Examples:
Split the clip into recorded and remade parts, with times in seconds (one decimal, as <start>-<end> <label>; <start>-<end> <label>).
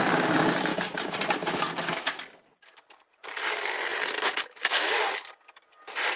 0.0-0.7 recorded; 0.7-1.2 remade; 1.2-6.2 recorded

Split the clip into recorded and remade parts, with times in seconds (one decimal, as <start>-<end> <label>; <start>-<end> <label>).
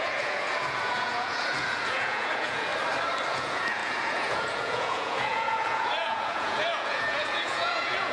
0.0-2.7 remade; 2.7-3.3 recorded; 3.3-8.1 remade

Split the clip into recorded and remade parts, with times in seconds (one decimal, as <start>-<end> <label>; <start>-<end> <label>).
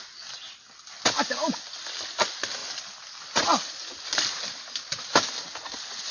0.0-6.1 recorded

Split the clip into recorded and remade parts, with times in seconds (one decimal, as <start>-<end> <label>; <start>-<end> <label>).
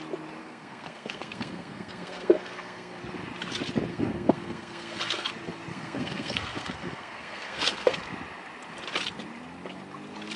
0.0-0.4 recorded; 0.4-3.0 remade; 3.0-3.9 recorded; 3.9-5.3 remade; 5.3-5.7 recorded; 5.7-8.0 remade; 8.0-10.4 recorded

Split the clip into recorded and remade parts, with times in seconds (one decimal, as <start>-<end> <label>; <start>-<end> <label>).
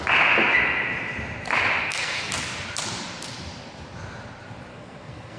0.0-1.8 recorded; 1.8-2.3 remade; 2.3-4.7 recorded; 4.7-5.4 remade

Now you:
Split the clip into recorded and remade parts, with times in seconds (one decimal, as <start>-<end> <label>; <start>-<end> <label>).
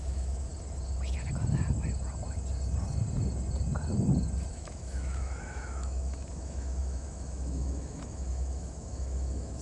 0.0-0.5 remade; 0.5-4.5 recorded; 4.5-9.6 remade